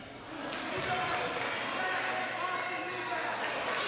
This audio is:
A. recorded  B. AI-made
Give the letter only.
A